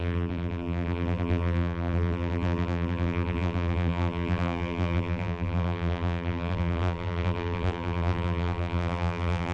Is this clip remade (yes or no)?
yes